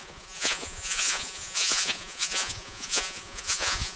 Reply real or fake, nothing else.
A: fake